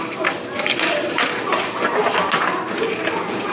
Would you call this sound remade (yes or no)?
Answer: no